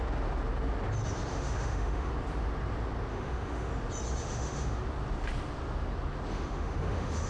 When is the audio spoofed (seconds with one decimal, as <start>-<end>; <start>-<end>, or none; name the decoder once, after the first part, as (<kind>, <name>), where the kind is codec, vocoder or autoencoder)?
1.3-2.1 (autoencoder, DAC-VAE); 3.1-3.7; 4.2-4.8; 6.3-7.3